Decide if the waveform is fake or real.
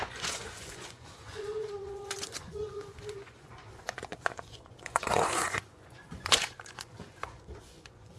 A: fake